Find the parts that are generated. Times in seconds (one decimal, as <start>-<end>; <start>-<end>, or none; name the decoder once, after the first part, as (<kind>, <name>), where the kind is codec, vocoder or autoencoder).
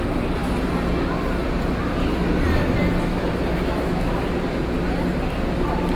3.1-4.1 (autoencoder, DAC-VAE)